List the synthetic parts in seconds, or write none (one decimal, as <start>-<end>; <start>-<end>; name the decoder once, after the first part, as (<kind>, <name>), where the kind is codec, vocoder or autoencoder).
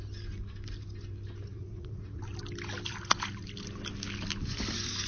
1.5-2.2 (vocoder, Vocos)